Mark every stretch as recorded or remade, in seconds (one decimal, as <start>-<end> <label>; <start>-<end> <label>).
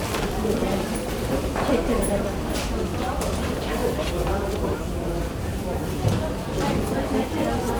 0.0-0.6 remade; 0.6-1.2 recorded; 1.2-3.8 remade; 3.8-4.3 recorded; 4.3-7.8 remade